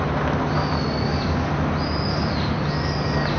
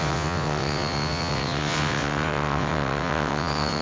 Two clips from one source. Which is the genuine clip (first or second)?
first